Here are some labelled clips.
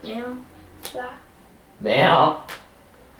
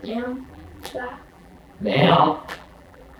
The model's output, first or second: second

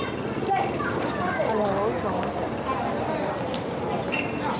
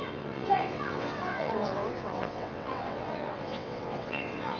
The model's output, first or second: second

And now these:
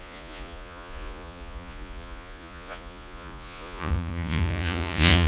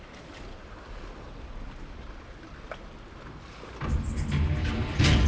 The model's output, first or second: first